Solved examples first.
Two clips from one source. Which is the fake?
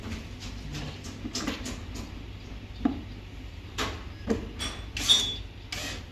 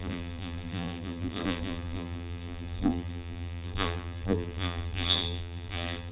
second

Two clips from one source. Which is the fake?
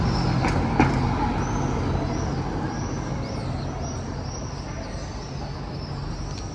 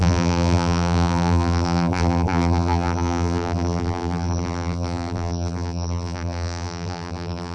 second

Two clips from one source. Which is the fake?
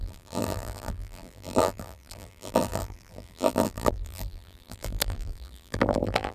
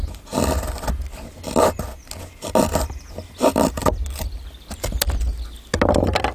first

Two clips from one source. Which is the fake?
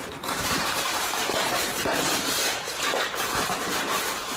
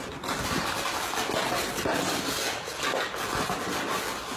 first